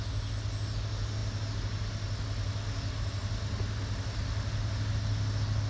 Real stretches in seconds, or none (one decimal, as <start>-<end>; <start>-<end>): 0.0-5.7